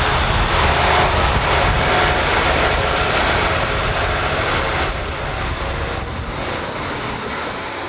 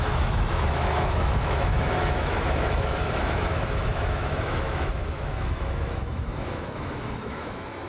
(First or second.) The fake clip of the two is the second